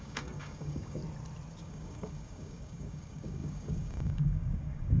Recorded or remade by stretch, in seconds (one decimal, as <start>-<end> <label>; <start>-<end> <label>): 0.0-1.0 remade; 1.0-1.6 recorded; 1.6-5.0 remade